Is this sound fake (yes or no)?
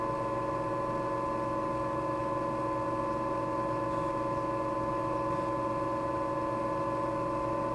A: no